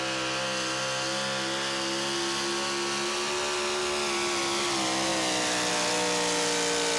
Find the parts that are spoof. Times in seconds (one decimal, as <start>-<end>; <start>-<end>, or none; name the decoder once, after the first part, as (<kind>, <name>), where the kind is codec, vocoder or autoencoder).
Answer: none